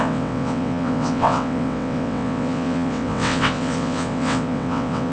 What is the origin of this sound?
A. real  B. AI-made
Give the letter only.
B